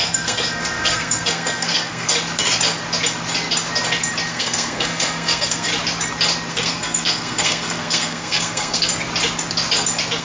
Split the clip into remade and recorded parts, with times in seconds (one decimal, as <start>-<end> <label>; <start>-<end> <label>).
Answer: 0.0-2.1 remade; 2.1-4.3 recorded; 4.3-5.7 remade; 5.7-6.5 recorded; 6.5-8.9 remade; 8.9-10.2 recorded